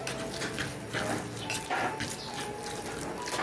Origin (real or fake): real